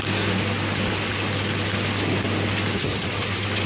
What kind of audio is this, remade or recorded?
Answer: recorded